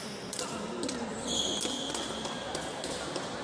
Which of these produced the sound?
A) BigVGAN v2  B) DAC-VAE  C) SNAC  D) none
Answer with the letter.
D